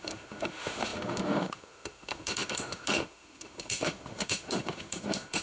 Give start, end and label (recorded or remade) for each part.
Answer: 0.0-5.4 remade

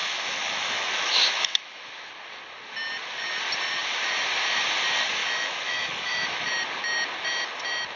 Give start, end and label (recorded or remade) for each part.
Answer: 0.0-2.1 remade; 2.1-5.2 recorded; 5.2-6.5 remade; 6.5-8.0 recorded

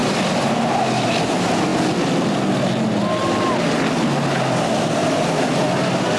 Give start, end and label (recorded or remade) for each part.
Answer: 0.0-6.2 recorded

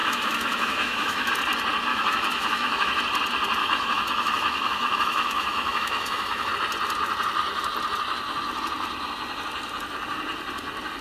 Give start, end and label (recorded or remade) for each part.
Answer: 0.0-1.3 remade; 1.3-1.9 recorded; 1.9-3.0 remade; 3.0-3.6 recorded; 3.6-6.5 remade; 6.5-11.0 recorded

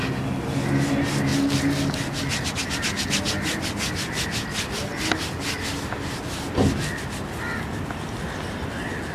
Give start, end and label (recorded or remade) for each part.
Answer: 0.0-9.1 recorded